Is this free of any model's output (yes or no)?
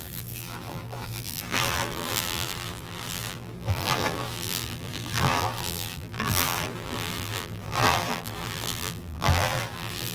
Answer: no